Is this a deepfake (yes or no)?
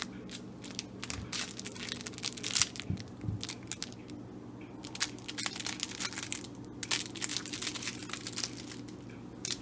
no